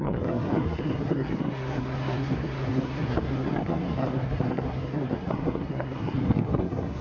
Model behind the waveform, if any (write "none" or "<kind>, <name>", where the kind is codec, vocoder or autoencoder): codec, SNAC